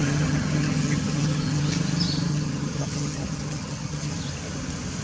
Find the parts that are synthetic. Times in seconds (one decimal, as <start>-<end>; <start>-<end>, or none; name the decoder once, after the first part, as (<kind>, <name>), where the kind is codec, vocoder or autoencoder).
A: 0.0-1.7 (vocoder, HiFi-GAN); 2.3-4.1